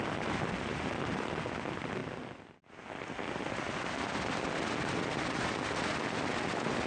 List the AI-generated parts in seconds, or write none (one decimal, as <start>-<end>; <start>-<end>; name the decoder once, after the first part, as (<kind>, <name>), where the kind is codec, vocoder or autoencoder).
none